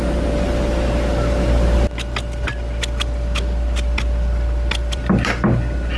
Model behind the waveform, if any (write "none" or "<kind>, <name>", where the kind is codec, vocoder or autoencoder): none